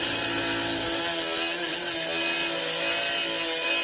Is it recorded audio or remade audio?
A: recorded